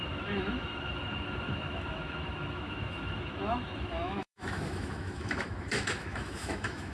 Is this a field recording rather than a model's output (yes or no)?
no